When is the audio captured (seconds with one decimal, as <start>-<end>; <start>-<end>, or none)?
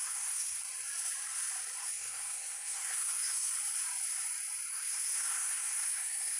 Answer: 0.6-1.8; 3.5-4.7